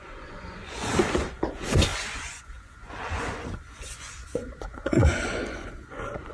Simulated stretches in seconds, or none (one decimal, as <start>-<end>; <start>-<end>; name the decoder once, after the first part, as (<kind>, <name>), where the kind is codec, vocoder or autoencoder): 0.0-6.3 (vocoder, Vocos)